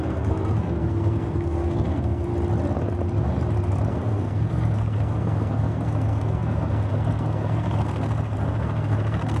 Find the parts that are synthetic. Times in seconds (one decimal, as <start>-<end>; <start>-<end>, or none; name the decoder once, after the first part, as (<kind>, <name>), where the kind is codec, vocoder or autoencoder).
0.0-2.3 (codec, SNAC); 3.9-9.4